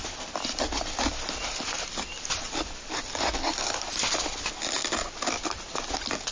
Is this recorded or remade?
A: recorded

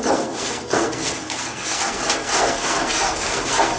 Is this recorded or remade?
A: remade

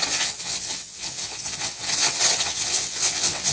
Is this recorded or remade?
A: remade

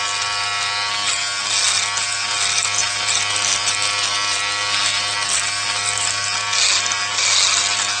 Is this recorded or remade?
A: recorded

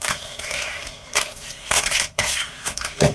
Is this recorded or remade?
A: remade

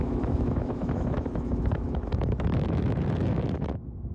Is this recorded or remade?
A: remade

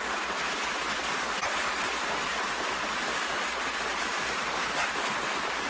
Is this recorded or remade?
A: recorded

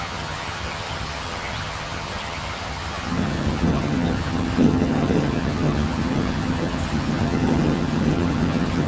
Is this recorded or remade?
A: remade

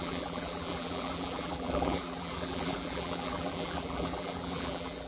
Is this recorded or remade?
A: remade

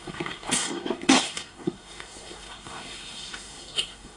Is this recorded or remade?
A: remade